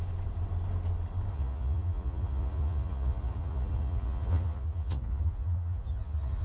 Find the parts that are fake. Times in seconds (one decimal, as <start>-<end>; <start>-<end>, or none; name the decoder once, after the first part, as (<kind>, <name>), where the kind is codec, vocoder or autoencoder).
1.3-6.4 (vocoder, Vocos)